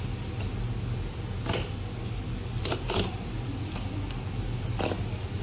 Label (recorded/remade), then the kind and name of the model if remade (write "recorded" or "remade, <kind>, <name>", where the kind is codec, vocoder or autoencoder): recorded